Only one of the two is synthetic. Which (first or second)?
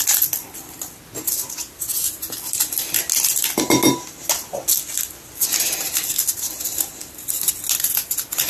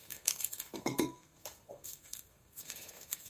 second